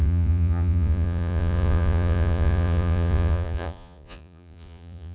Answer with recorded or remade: remade